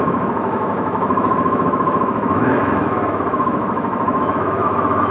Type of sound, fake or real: fake